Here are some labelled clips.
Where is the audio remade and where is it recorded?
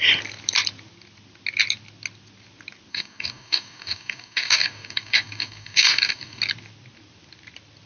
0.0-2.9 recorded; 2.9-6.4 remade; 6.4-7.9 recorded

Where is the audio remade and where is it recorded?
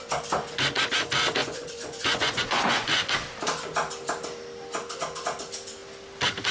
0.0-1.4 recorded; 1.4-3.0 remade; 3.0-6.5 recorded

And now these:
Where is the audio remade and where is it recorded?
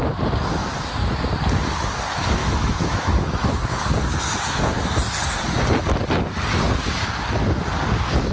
0.0-2.4 recorded; 2.4-3.5 remade; 3.5-8.3 recorded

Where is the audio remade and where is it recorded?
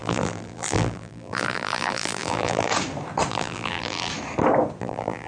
0.0-2.7 remade; 2.7-3.3 recorded; 3.3-4.1 remade; 4.1-4.8 recorded; 4.8-5.3 remade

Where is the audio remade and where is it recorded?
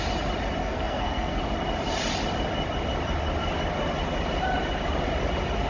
0.0-0.6 recorded; 0.6-1.4 remade; 1.4-5.7 recorded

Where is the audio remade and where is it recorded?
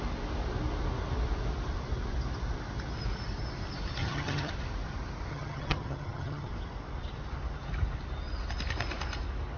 0.0-4.0 recorded; 4.0-4.5 remade; 4.5-5.3 recorded; 5.3-6.5 remade; 6.5-9.6 recorded